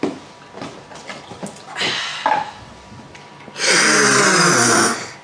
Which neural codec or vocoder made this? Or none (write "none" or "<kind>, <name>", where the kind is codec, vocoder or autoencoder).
none